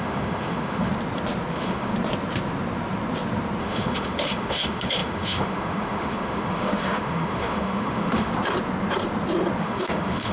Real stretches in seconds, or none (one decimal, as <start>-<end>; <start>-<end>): 0.9-1.5; 1.9-3.6; 8.3-9.6